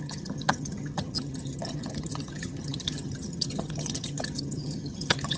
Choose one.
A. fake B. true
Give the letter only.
A